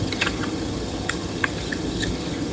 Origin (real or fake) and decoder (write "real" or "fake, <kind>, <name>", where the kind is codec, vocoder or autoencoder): fake, vocoder, HiFi-GAN